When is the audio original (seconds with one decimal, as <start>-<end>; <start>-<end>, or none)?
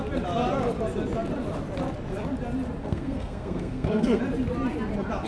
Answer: 0.0-2.8; 4.2-5.3